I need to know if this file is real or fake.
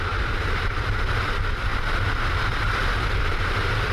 fake